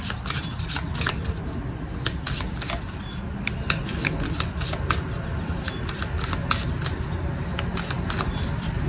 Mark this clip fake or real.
real